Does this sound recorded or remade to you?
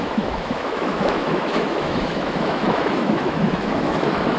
remade